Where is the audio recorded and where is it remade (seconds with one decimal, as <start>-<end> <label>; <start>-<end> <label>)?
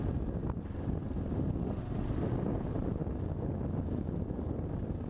0.0-5.1 recorded